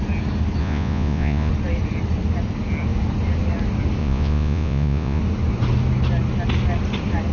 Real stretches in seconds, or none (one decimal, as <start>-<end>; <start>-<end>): 0.0-0.6; 1.5-4.0; 5.2-7.3